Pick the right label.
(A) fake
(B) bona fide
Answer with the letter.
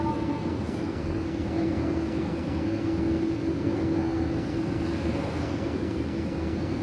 A